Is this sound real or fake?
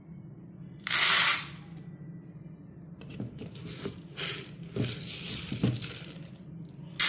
real